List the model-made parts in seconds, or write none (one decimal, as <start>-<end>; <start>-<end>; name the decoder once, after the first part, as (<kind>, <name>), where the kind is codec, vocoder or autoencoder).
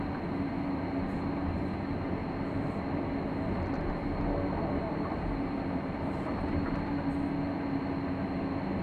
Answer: 2.2-6.7 (vocoder, BigVGAN v2)